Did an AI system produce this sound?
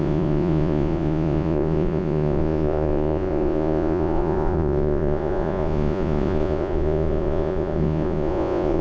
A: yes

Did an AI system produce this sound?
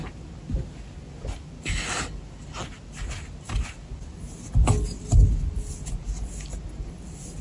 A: no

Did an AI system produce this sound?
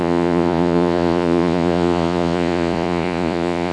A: yes